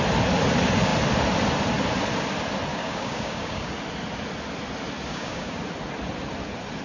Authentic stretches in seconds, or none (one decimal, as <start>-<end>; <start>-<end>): 0.0-2.7; 3.7-5.1; 5.6-6.8